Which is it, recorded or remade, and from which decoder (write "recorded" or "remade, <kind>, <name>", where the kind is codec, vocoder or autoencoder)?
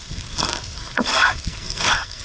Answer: remade, codec, SNAC